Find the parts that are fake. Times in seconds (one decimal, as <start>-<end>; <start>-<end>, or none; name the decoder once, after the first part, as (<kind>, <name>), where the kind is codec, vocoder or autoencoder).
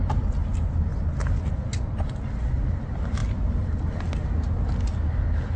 none